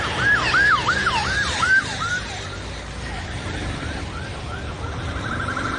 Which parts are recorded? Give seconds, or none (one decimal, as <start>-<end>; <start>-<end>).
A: 4.3-5.3